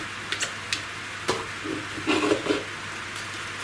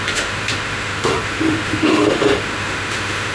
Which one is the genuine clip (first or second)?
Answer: first